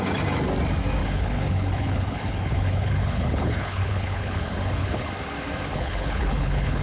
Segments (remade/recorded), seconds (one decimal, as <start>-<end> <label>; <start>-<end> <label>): 0.0-1.0 recorded; 1.0-5.1 remade; 5.1-5.7 recorded; 5.7-6.8 remade